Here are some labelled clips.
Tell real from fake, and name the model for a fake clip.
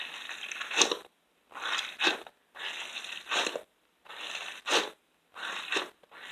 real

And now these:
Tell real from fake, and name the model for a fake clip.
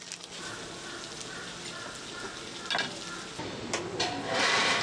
real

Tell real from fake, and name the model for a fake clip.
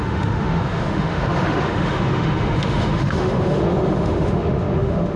fake, autoencoder, DAC-VAE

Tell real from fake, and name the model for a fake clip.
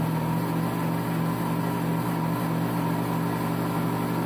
real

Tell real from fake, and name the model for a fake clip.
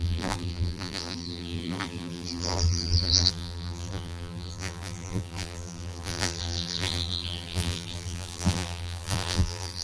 fake, vocoder, BigVGAN v2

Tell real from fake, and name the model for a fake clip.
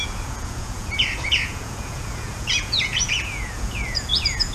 fake, vocoder, Vocos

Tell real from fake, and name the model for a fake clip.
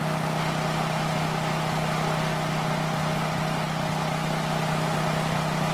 real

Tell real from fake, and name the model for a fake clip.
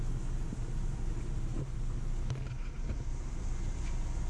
real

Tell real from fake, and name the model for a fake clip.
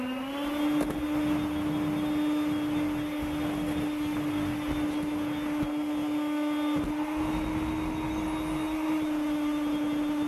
real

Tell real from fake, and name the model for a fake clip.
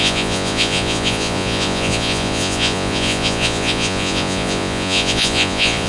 fake, vocoder, Vocos